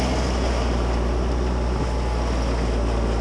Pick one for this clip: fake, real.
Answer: real